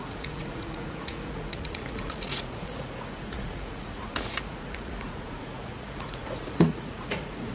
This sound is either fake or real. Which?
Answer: fake